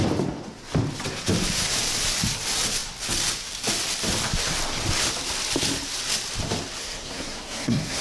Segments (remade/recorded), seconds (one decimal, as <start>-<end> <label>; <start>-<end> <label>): 0.0-6.8 recorded; 6.8-8.0 remade